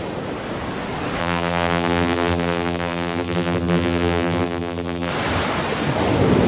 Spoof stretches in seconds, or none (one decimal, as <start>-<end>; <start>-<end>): 1.2-5.1

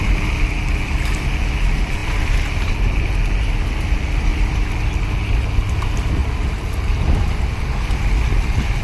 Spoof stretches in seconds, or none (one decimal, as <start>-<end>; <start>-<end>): 2.0-2.7; 4.3-5.4

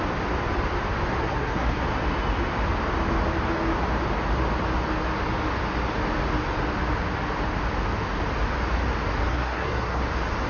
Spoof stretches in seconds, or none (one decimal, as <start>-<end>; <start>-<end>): 1.2-1.8; 9.3-10.0